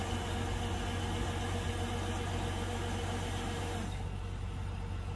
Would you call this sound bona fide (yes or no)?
yes